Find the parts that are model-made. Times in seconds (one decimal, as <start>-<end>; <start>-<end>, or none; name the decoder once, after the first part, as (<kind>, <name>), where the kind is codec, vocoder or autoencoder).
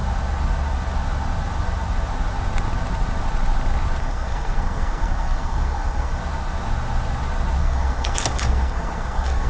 4.0-6.2 (codec, SNAC); 7.6-9.5